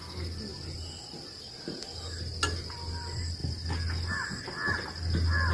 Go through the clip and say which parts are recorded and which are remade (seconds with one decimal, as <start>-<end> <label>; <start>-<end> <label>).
0.0-5.5 recorded